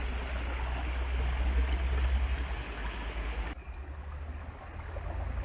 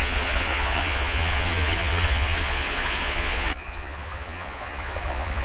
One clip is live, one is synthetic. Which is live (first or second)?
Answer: first